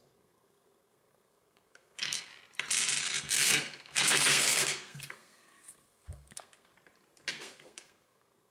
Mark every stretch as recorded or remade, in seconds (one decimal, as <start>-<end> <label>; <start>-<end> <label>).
0.0-2.3 remade; 2.3-3.0 recorded; 3.0-6.7 remade; 6.7-7.3 recorded; 7.3-8.5 remade

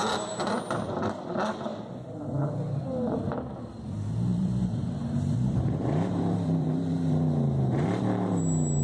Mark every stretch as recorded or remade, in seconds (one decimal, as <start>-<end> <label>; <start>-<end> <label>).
0.0-4.3 recorded; 4.3-8.4 remade; 8.4-8.8 recorded